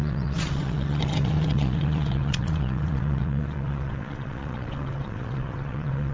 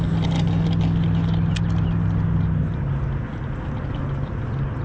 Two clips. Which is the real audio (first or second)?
second